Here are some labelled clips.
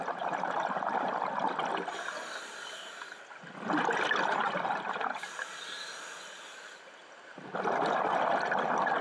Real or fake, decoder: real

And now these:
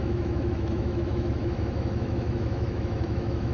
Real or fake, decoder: fake, autoencoder, DAC-VAE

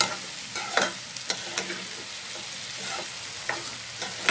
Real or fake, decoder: real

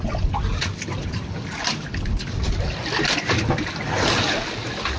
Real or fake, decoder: real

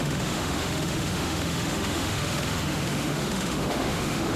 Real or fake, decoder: fake, autoencoder, DAC-VAE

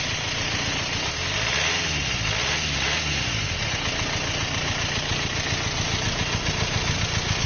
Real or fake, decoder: real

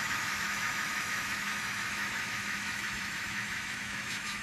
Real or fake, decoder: fake, autoencoder, DAC-VAE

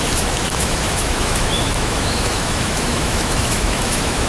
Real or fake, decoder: fake, autoencoder, DAC-VAE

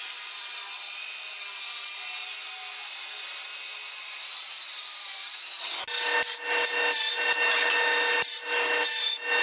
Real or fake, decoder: real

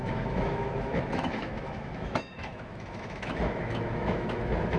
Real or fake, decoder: fake, autoencoder, DAC-VAE